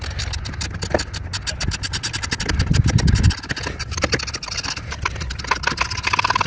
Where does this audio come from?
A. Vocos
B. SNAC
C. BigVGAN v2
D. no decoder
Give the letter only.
D